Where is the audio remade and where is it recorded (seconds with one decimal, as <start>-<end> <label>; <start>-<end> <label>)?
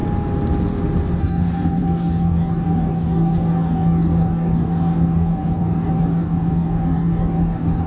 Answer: 0.0-1.2 recorded; 1.2-7.9 remade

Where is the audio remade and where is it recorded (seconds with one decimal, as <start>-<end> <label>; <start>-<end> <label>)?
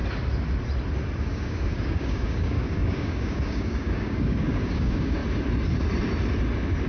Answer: 0.0-1.2 recorded; 1.2-5.2 remade; 5.2-6.9 recorded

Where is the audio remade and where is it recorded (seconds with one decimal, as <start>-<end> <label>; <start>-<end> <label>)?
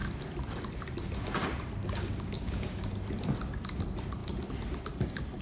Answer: 0.0-1.8 recorded; 1.8-2.8 remade; 2.8-5.4 recorded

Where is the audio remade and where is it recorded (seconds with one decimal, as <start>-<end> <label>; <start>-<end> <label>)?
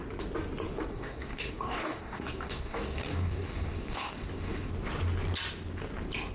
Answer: 0.0-0.9 recorded; 0.9-4.7 remade; 4.7-6.3 recorded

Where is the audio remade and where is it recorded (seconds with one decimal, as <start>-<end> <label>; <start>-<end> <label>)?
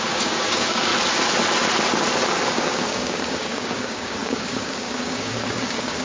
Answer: 0.0-0.9 remade; 0.9-2.5 recorded; 2.5-6.0 remade